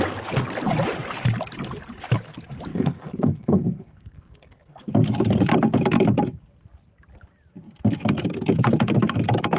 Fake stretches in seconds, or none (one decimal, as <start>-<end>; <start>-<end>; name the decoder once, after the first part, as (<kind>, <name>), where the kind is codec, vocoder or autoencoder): 2.7-4.9 (codec, SNAC)